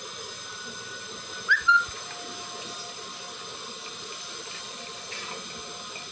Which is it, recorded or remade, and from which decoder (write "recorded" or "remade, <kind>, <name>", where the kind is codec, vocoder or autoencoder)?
recorded